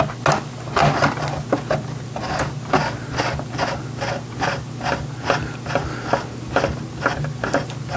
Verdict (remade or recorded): recorded